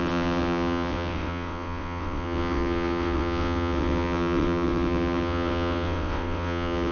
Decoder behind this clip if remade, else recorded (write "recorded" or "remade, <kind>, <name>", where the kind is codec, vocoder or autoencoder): remade, vocoder, WaveNeXt